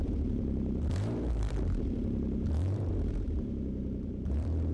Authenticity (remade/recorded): remade